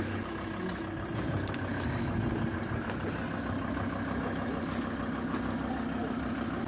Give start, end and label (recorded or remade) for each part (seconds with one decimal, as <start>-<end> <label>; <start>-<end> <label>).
0.0-6.7 recorded